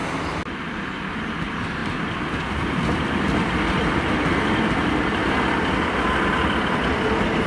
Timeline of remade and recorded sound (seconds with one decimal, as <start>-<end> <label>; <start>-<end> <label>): 0.0-7.5 recorded